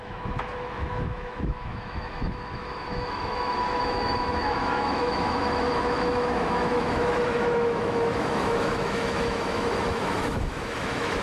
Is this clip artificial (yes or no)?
yes